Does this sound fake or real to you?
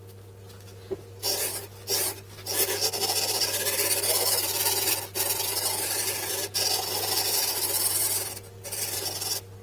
real